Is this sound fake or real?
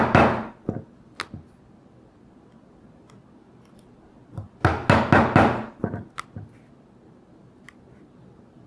real